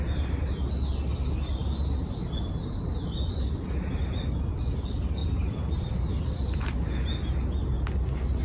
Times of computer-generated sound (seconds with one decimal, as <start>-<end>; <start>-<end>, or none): 5.2-7.0